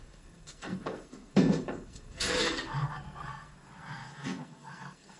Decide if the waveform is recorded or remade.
remade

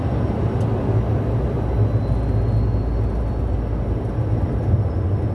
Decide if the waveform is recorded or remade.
recorded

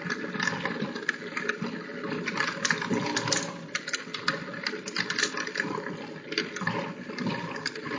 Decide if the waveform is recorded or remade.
recorded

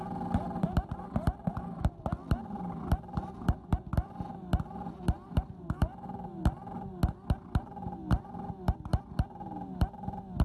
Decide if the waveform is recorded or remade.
recorded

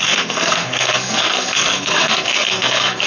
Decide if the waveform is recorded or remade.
remade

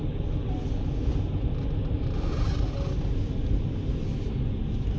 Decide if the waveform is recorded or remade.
recorded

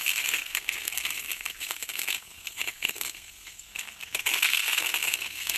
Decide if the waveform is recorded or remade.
remade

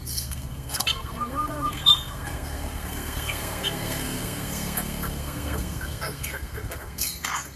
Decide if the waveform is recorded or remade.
remade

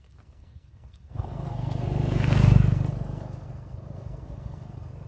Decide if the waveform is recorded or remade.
remade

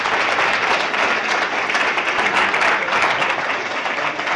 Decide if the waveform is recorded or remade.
recorded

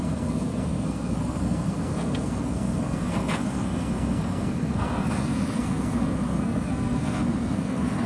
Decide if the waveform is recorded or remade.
remade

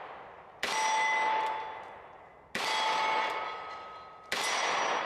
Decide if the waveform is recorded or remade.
recorded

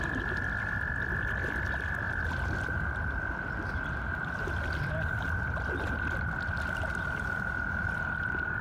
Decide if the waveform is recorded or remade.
recorded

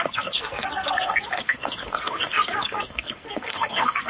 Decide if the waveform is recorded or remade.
remade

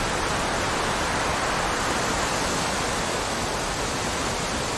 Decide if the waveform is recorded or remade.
recorded